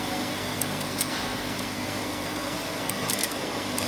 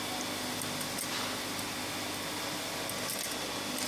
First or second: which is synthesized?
first